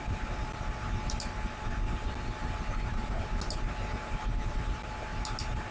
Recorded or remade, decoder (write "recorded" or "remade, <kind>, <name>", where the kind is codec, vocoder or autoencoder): recorded